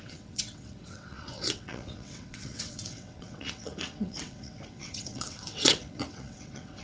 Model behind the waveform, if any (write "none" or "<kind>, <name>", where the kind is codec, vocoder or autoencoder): vocoder, WaveNeXt